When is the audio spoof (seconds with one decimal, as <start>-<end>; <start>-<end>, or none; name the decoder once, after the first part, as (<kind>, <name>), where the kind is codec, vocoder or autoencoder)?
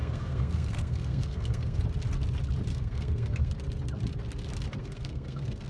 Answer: 0.0-1.8 (codec, SNAC); 2.7-3.5; 4.8-5.7